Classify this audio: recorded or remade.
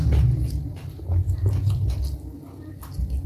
recorded